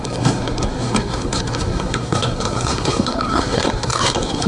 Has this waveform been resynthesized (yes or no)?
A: yes